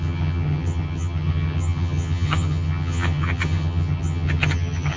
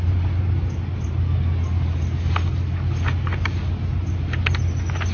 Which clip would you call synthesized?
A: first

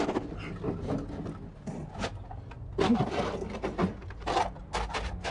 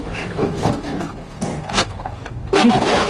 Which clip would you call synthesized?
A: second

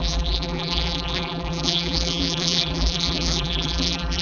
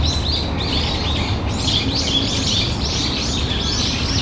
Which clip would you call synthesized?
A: first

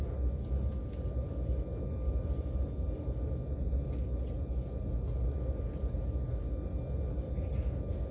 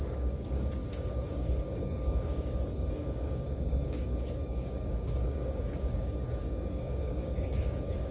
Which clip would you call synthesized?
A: second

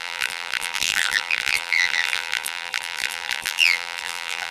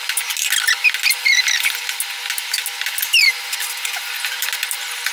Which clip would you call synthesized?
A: first